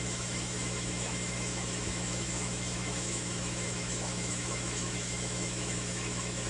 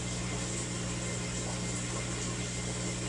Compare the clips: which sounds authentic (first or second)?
second